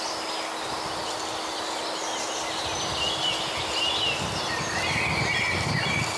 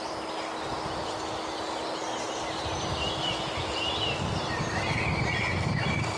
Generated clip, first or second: second